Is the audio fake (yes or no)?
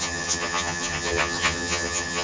yes